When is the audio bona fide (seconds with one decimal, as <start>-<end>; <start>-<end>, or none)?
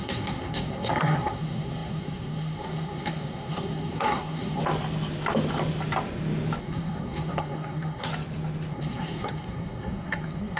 4.6-6.6; 8.1-8.7